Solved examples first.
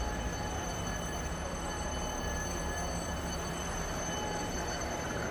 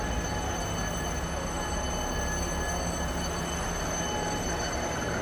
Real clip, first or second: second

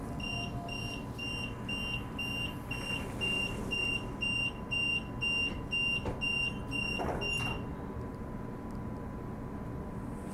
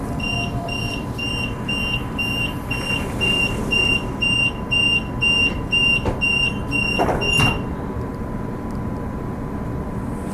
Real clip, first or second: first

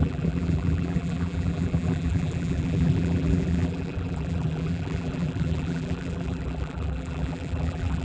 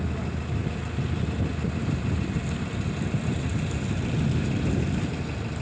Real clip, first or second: second